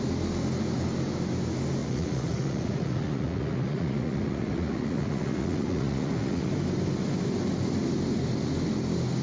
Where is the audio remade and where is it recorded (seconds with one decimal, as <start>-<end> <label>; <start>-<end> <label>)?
0.0-1.8 recorded; 1.8-6.5 remade; 6.5-9.2 recorded